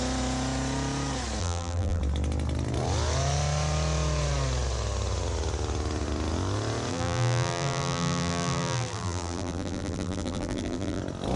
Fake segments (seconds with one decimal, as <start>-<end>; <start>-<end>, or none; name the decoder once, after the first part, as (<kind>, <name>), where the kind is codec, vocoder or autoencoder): 1.4-2.0 (vocoder, BigVGAN v2); 6.9-11.0